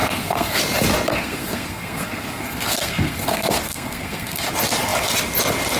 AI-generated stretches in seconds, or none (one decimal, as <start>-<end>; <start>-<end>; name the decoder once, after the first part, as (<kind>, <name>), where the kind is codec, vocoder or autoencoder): 0.0-0.6 (codec, SNAC); 1.1-4.5